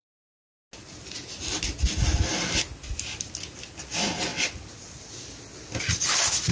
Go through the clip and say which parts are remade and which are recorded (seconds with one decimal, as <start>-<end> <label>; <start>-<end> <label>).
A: 0.0-6.5 recorded